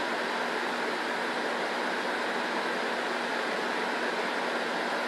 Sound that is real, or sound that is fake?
real